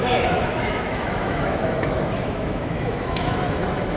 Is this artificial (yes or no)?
yes